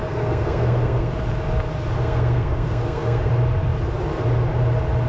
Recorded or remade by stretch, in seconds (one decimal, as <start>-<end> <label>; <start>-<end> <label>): 0.0-1.1 remade; 1.1-2.0 recorded; 2.0-3.3 remade; 3.3-5.1 recorded